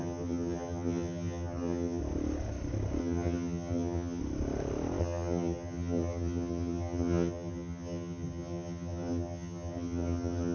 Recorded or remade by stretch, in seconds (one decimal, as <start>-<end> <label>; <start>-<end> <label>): 0.0-2.0 remade; 2.0-3.0 recorded; 3.0-4.2 remade; 4.2-5.0 recorded; 5.0-10.5 remade